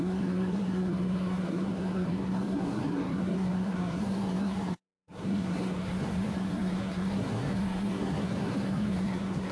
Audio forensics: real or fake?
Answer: fake